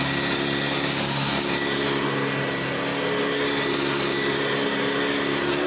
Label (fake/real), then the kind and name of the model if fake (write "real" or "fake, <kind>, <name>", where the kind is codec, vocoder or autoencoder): real